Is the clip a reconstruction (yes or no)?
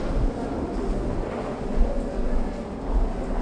no